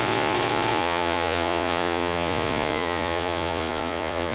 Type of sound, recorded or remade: remade